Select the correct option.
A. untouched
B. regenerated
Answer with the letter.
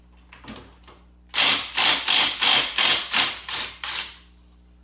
A